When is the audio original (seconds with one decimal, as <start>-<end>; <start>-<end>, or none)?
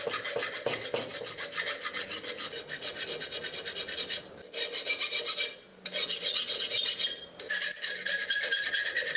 0.0-9.2